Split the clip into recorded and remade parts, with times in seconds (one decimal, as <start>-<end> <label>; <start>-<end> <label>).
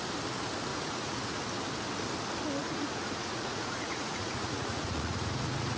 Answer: 0.0-0.7 recorded; 0.7-1.4 remade; 1.4-2.6 recorded; 2.6-5.8 remade